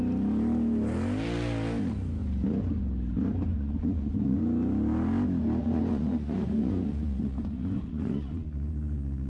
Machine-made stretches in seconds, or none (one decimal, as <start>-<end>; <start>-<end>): 3.5-4.4; 5.6-9.3